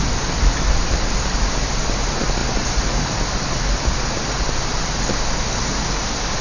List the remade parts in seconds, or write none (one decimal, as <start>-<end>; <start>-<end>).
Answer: none